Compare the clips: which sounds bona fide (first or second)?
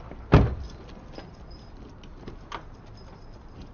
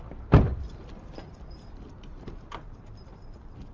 first